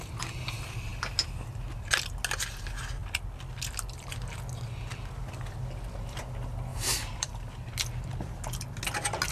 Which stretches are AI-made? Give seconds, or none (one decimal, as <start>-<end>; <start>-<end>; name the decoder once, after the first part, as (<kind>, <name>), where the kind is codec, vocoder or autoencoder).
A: 6.7-7.3 (vocoder, BigVGAN v2)